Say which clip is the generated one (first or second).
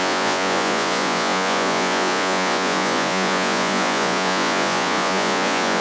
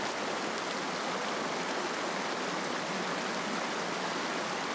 first